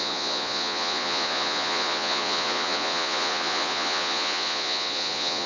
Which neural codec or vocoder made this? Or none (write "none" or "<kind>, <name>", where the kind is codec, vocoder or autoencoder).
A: vocoder, Vocos